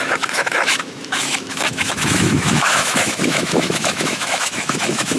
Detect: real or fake fake